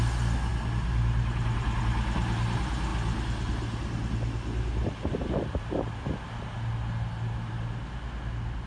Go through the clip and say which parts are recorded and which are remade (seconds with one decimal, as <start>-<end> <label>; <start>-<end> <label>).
0.0-8.7 recorded

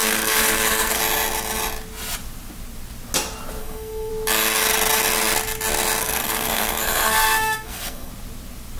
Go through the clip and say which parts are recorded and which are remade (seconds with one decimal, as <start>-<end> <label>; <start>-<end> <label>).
0.0-1.0 remade; 1.0-3.6 recorded; 3.6-4.1 remade; 4.1-6.0 recorded; 6.0-8.1 remade; 8.1-8.8 recorded

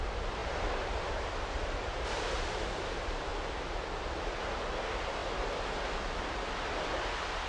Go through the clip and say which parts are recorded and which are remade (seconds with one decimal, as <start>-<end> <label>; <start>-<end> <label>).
0.0-7.5 recorded

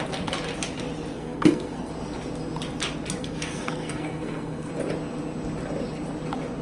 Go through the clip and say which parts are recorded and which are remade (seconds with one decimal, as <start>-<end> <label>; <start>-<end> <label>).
0.0-1.1 recorded; 1.1-1.9 remade; 1.9-3.2 recorded; 3.2-4.7 remade; 4.7-6.6 recorded